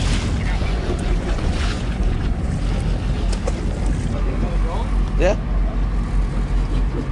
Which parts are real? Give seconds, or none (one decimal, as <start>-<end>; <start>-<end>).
0.0-0.6; 2.5-7.1